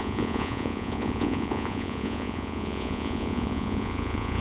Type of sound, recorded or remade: remade